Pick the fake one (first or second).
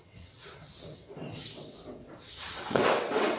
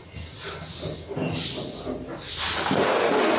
first